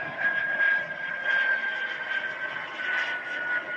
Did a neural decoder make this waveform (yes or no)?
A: no